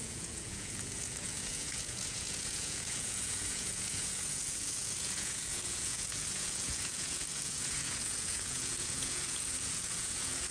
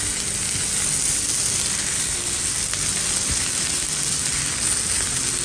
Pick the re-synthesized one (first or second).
first